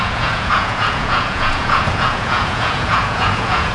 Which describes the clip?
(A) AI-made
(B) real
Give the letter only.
A